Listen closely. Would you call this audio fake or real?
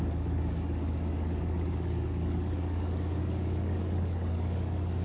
fake